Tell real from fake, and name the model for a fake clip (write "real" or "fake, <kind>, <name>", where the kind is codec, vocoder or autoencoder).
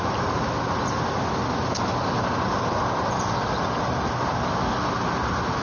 real